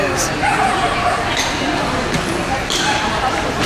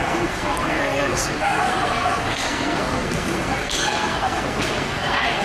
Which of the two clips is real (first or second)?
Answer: first